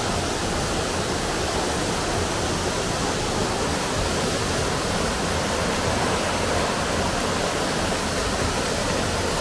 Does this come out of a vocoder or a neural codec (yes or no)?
no